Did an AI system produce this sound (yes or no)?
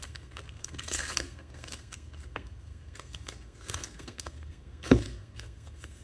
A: yes